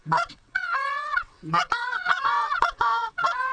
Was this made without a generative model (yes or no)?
no